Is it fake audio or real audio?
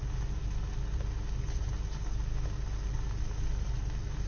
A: real